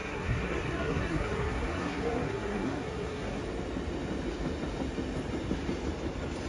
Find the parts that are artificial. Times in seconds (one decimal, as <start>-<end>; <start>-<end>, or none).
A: 0.0-3.4